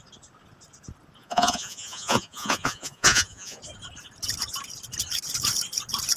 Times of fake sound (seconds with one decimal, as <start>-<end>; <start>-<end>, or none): 1.2-3.6